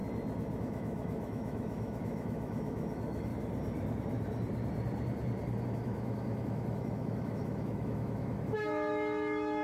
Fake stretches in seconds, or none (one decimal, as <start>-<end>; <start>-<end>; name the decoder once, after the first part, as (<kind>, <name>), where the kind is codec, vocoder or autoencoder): 0.6-3.3 (autoencoder, DAC-VAE); 5.6-9.6